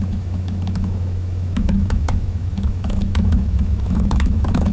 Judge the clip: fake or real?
fake